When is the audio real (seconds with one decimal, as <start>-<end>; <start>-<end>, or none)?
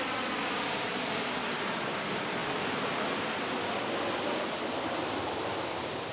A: 0.0-6.1